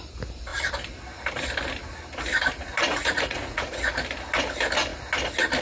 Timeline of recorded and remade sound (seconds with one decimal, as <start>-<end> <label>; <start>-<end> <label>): 0.0-2.9 recorded; 2.9-3.8 remade; 3.8-5.6 recorded